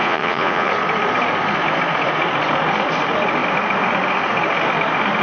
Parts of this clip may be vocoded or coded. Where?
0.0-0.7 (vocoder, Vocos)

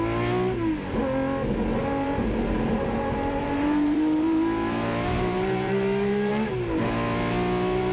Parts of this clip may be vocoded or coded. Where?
1.8-6.3 (vocoder, BigVGAN v2)

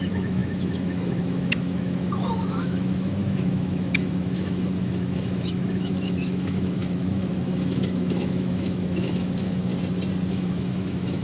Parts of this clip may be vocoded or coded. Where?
0.0-9.7 (autoencoder, DAC-VAE); 10.3-11.2

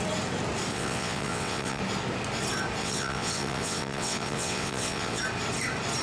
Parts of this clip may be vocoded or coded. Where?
0.7-1.8 (vocoder, WaveNeXt); 2.8-5.2

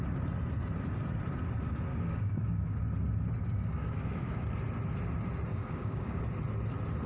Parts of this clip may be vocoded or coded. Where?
1.9-2.8 (codec, DAC); 3.4-4.4; 5.5-6.2